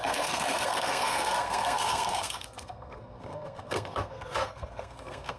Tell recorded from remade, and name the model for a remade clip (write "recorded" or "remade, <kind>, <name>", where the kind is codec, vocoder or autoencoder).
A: remade, codec, SNAC